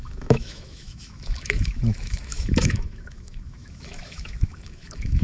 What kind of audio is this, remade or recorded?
remade